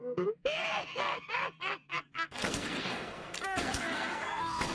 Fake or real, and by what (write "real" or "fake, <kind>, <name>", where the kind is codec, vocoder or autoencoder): fake, codec, SNAC